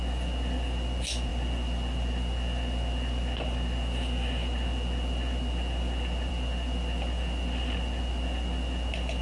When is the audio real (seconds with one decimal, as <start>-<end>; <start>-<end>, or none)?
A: 0.0-9.2